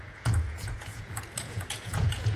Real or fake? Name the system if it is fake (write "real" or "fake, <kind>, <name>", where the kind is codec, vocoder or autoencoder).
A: fake, vocoder, Vocos